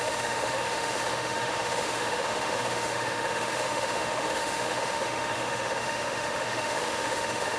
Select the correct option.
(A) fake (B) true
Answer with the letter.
A